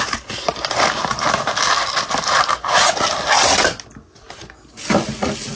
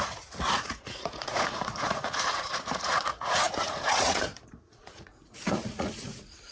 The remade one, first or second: second